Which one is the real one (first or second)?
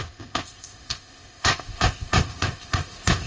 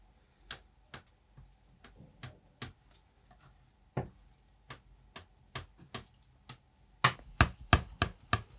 second